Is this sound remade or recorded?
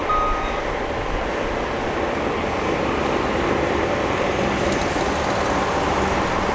recorded